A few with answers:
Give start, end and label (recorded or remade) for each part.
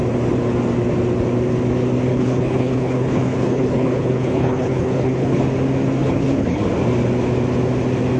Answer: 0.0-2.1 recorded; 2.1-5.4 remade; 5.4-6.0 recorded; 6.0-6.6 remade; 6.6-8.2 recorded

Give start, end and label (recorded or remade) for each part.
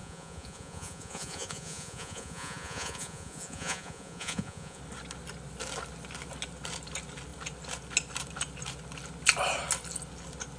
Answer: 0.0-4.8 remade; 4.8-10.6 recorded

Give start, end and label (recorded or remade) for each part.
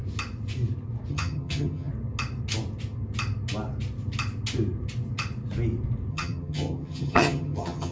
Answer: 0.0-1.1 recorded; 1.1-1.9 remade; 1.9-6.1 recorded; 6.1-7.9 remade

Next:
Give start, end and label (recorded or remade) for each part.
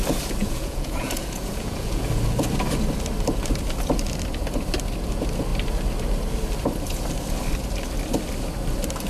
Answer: 0.0-0.4 recorded; 0.4-2.1 remade; 2.1-9.1 recorded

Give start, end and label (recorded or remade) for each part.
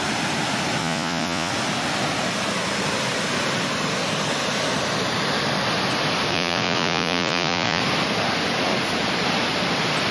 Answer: 0.0-0.8 recorded; 0.8-1.5 remade; 1.5-6.3 recorded; 6.3-7.8 remade; 7.8-10.1 recorded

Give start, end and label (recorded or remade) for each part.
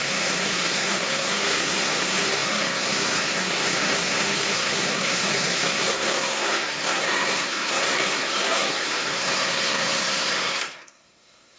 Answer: 0.0-11.6 remade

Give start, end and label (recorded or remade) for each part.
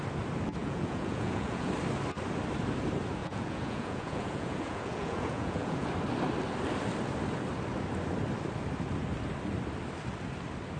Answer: 0.0-0.6 recorded; 0.6-1.7 remade; 1.7-3.2 recorded; 3.2-5.9 remade; 5.9-10.8 recorded